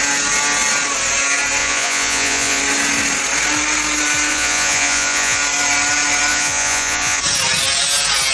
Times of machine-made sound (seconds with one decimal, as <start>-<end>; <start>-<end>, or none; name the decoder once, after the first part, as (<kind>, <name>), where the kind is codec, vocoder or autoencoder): 1.6-2.6 (vocoder, Vocos); 4.3-5.4; 6.3-7.2